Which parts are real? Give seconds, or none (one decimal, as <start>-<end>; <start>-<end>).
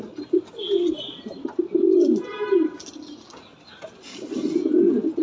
0.0-5.2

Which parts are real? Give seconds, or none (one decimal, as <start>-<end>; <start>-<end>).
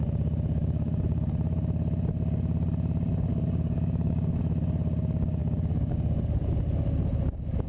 0.0-0.6; 1.3-3.3; 4.4-5.4; 5.9-7.7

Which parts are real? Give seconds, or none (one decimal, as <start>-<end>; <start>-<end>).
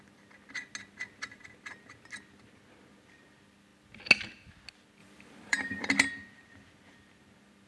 0.0-5.0; 5.9-7.7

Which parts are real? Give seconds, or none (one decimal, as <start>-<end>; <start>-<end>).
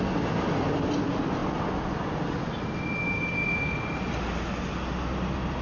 0.0-5.6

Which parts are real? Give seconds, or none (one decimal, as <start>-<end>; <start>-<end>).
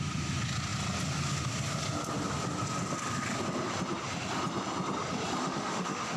0.0-5.4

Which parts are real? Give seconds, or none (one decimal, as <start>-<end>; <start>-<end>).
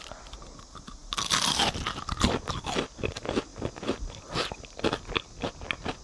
0.0-6.0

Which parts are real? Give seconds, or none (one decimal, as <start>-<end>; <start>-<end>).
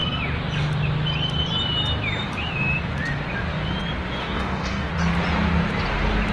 0.0-4.2; 4.9-6.3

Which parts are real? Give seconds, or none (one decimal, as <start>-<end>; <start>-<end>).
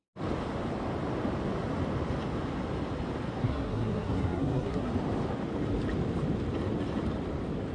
0.0-3.4; 4.9-7.7